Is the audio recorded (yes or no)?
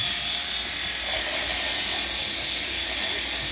yes